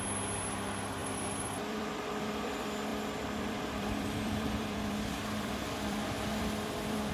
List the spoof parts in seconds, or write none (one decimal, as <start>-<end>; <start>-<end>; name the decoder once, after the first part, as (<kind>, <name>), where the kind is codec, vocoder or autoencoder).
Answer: 1.0-2.5 (vocoder, BigVGAN v2); 2.9-7.1